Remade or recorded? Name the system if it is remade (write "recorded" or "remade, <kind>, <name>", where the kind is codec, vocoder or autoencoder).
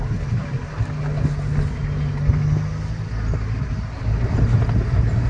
recorded